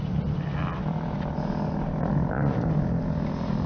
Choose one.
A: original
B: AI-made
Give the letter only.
A